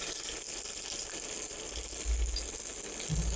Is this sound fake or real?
real